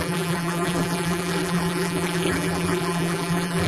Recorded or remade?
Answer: remade